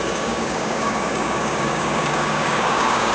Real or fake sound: fake